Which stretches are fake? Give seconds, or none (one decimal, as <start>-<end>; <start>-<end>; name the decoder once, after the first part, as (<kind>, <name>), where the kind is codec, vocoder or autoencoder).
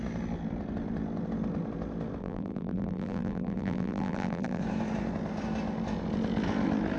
2.2-4.6 (vocoder, BigVGAN v2)